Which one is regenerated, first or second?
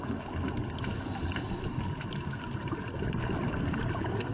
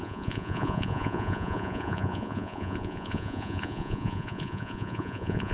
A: second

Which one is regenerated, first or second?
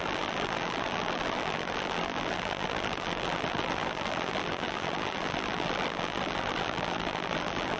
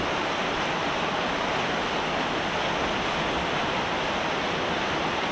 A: first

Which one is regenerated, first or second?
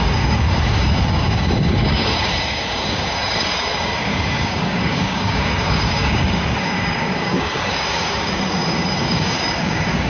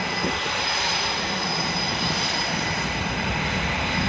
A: first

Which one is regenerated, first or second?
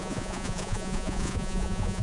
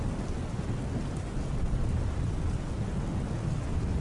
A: first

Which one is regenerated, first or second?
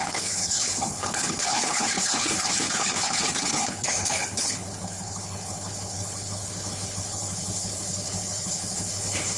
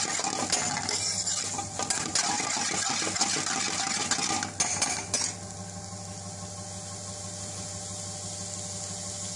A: first